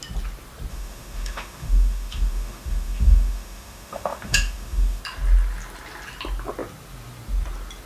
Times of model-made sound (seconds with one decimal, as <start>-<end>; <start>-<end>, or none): 0.7-5.0